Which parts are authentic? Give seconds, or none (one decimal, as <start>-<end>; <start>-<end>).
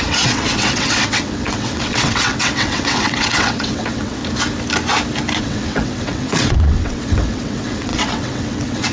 4.2-5.4